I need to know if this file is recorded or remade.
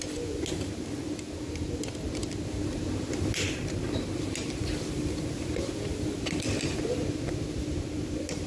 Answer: recorded